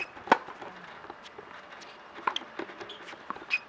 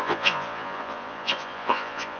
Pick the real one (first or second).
first